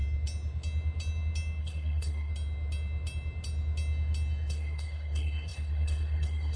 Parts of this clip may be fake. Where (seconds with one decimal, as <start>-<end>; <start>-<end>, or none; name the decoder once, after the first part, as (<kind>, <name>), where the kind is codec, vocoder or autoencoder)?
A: 1.6-2.3 (codec, SNAC); 4.5-6.6